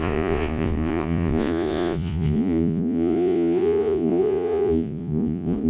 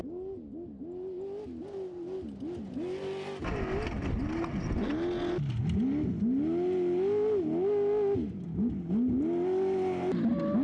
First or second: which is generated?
first